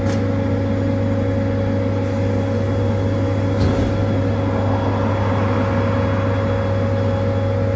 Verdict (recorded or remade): recorded